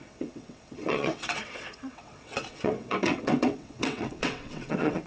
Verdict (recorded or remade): remade